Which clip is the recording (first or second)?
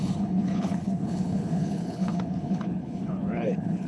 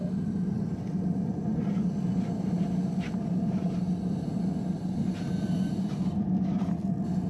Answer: second